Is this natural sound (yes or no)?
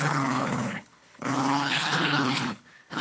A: no